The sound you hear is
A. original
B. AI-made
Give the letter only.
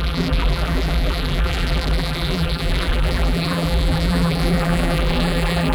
B